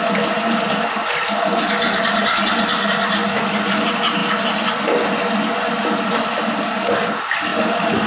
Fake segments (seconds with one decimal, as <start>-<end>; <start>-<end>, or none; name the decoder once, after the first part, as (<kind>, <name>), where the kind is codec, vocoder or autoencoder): none